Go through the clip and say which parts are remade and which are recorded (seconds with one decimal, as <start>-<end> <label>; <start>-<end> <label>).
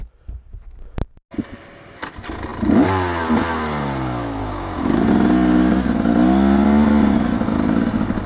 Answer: 0.0-4.4 recorded; 4.4-5.1 remade; 5.1-8.3 recorded